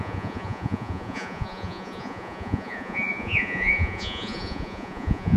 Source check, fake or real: fake